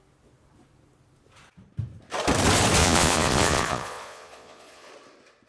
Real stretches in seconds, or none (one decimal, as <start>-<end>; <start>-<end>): 0.0-2.8; 4.9-5.5